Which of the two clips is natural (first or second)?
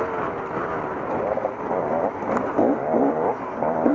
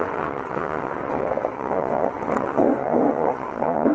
first